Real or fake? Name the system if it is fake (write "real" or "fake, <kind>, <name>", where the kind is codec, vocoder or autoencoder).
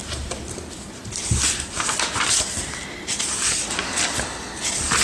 real